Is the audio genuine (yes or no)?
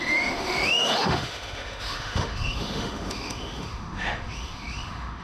no